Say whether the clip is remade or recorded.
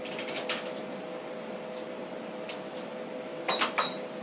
recorded